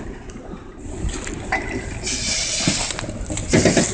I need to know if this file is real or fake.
real